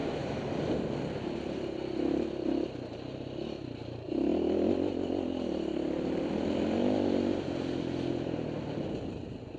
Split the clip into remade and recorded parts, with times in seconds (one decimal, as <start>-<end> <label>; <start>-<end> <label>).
0.0-0.6 remade; 0.6-9.6 recorded